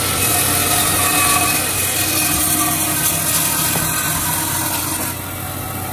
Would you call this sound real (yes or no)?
yes